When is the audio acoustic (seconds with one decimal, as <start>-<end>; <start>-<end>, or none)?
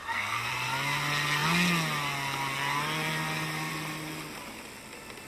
0.5-5.3